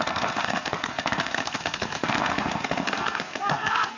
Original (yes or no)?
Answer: no